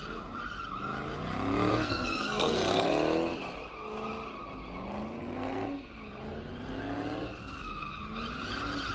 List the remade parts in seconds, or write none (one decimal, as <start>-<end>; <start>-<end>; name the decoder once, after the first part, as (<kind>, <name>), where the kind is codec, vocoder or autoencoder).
1.7-2.9 (codec, SNAC); 5.2-5.9; 7.4-7.9